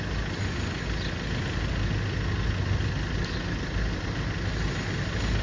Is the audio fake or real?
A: real